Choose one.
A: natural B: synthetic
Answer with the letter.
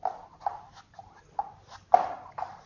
A